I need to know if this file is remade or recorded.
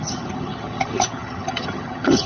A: remade